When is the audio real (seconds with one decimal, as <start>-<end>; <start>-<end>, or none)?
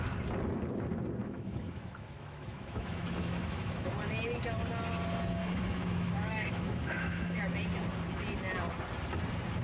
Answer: 0.0-1.2; 3.9-5.4; 7.4-9.6